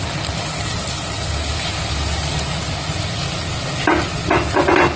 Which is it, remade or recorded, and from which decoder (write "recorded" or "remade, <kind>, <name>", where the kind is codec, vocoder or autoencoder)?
recorded